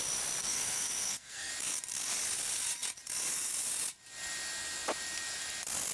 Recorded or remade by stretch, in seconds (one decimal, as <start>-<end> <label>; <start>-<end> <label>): 0.0-0.4 recorded; 0.4-1.5 remade; 1.5-5.9 recorded